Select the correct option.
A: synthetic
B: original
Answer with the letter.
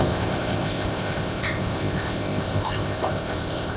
A